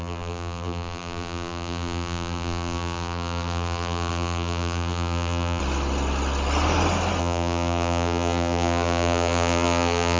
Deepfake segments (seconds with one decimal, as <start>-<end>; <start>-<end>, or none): 0.0-5.6; 7.2-10.2